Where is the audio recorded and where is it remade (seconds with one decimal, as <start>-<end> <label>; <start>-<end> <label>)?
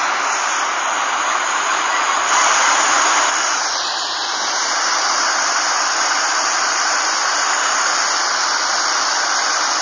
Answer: 0.0-2.1 recorded; 2.1-4.6 remade; 4.6-6.3 recorded; 6.3-7.2 remade; 7.2-8.1 recorded; 8.1-9.8 remade